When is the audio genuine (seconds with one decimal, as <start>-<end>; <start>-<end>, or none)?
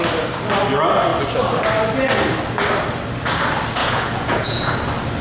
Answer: 0.0-3.8; 4.7-5.2